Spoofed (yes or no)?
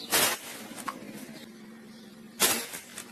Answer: no